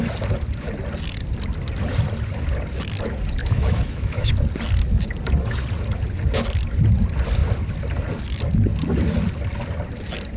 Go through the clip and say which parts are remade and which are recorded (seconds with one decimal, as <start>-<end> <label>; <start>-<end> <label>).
0.0-3.4 recorded; 3.4-4.3 remade; 4.3-10.4 recorded